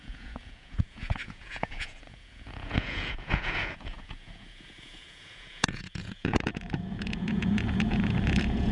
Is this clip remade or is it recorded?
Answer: remade